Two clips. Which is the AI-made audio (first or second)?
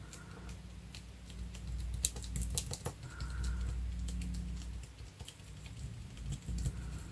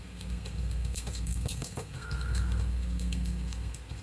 second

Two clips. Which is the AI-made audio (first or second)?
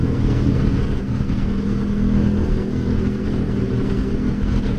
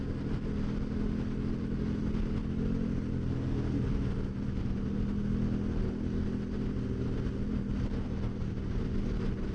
first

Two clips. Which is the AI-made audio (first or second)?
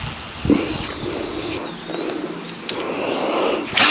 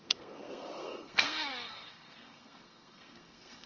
second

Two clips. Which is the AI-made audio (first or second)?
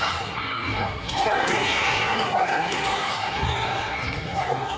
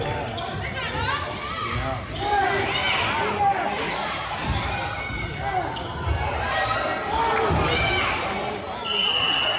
first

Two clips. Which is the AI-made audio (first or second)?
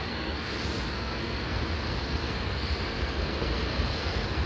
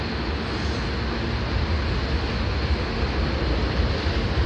first